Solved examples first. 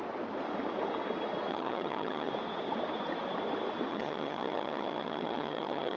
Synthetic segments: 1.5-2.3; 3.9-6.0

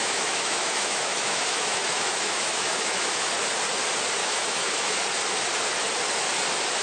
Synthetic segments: 0.0-3.3; 4.2-5.0

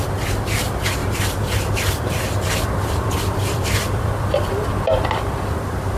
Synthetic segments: 1.0-4.6

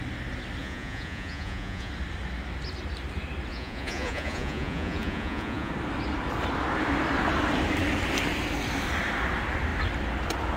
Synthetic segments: 0.6-1.9; 3.5-5.7

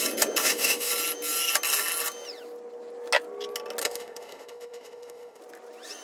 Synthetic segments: 0.4-0.9; 3.8-5.4

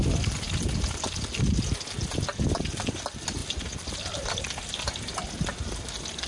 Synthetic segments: none